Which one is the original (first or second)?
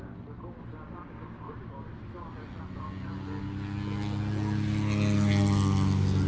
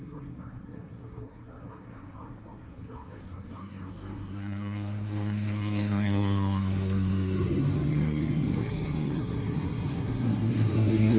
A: first